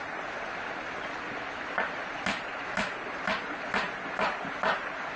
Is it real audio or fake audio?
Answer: real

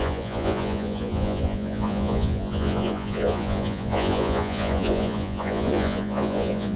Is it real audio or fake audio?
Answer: fake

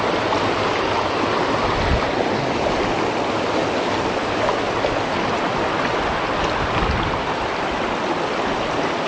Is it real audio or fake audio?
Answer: real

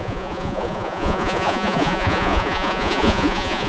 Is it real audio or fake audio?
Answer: fake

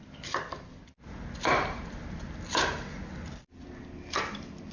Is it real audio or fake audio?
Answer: real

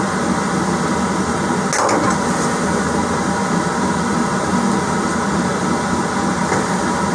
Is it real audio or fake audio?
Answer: real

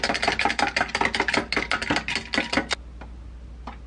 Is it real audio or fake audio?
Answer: real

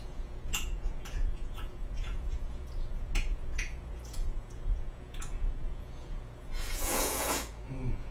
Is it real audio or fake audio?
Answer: fake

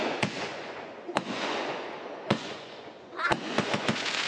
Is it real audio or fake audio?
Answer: fake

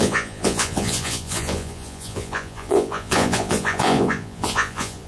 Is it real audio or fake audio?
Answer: fake